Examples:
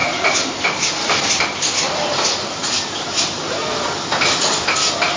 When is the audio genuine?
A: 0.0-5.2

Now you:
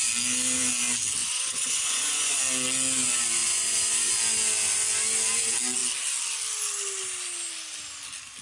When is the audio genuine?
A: 0.0-1.2; 2.4-3.4; 4.1-8.4

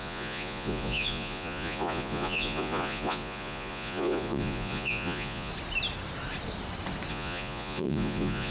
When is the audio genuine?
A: 5.5-7.1

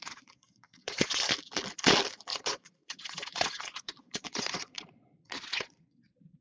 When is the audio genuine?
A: 1.1-2.3

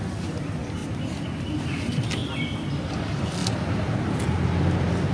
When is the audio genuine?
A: 0.0-5.1